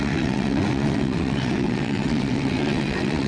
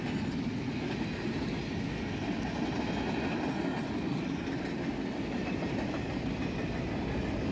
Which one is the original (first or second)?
second